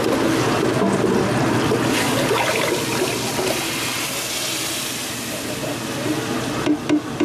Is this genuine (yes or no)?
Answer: yes